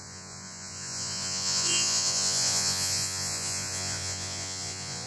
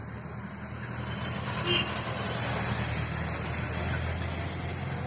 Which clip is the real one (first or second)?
second